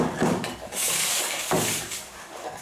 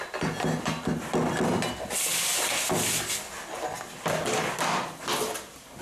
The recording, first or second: second